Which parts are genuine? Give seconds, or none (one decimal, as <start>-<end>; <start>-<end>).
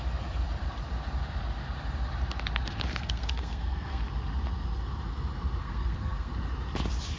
0.0-2.9; 4.0-5.6; 6.3-7.2